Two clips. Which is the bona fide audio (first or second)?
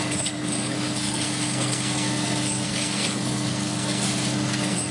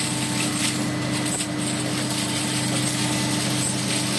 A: second